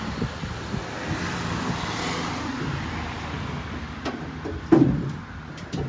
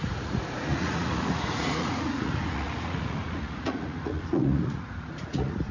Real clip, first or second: first